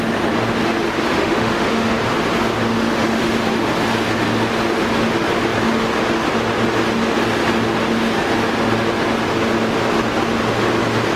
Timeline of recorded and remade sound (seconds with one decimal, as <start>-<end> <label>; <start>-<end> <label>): 0.0-1.1 recorded; 1.1-1.9 remade; 1.9-2.7 recorded; 2.7-3.3 remade; 3.3-11.2 recorded